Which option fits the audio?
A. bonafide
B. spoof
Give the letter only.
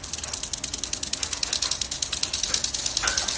A